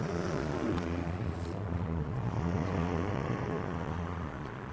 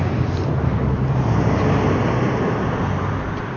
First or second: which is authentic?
second